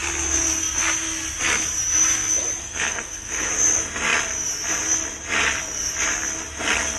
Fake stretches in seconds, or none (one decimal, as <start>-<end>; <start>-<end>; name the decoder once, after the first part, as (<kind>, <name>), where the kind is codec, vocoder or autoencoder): 2.6-3.5 (codec, SNAC)